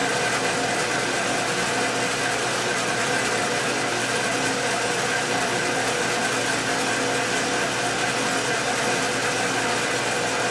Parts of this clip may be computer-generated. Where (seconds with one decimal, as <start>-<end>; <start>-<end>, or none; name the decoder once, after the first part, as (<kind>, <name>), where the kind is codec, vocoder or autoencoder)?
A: none